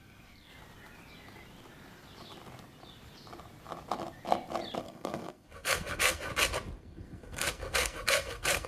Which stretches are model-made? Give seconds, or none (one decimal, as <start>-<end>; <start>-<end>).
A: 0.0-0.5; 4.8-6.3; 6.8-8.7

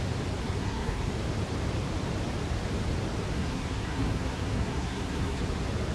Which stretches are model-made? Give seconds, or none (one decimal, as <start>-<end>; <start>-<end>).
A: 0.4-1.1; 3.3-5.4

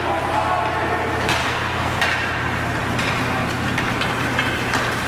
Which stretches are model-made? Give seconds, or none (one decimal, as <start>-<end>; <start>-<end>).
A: 1.4-2.0

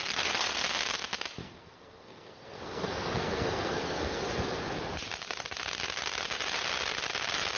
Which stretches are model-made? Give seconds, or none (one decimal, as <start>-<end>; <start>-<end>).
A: 0.0-0.6; 1.4-4.2

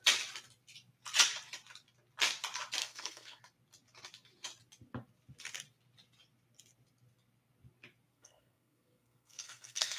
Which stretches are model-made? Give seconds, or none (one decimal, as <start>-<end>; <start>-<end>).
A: 2.8-3.4; 8.1-10.0

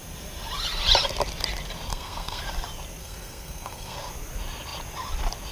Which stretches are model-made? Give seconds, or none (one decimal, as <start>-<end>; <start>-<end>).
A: 1.9-2.4; 3.0-4.1